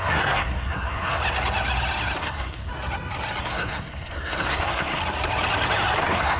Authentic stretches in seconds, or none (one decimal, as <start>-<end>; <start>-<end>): 1.2-2.2; 2.7-3.4; 5.0-6.0